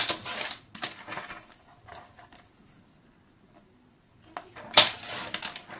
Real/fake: real